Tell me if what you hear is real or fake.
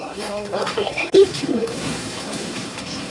fake